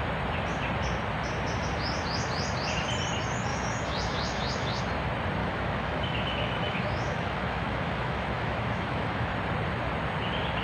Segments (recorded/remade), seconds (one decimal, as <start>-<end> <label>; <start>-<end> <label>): 0.0-3.5 recorded; 3.5-4.8 remade; 4.8-5.4 recorded; 5.4-9.3 remade; 9.3-10.6 recorded